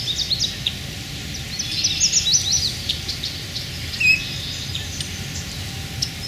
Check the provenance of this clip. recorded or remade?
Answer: recorded